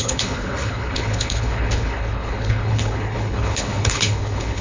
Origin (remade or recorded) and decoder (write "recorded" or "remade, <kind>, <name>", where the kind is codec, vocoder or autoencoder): remade, codec, HILCodec